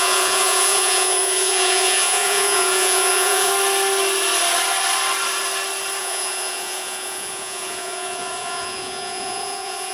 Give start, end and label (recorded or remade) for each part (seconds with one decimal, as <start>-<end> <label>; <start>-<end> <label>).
0.0-3.5 remade; 3.5-6.0 recorded; 6.0-9.9 remade